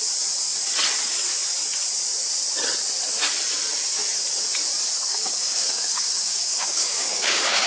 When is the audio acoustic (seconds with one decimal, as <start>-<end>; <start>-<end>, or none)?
0.0-5.1

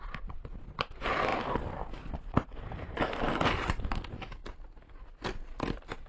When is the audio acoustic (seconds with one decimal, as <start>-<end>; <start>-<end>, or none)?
0.0-6.1